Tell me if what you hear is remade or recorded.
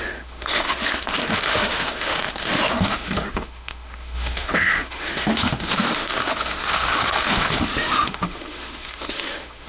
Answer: remade